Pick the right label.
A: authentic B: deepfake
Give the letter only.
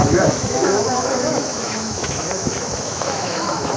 B